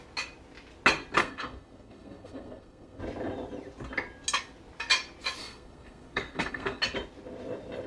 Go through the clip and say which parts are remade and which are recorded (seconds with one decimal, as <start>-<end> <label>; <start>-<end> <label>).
0.0-1.2 recorded; 1.2-3.0 remade; 3.0-5.4 recorded; 5.4-6.8 remade; 6.8-7.9 recorded